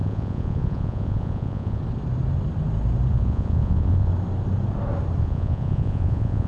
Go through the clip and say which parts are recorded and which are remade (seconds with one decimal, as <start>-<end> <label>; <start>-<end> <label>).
0.0-1.8 remade; 1.8-3.1 recorded; 3.1-4.1 remade; 4.1-5.2 recorded; 5.2-6.5 remade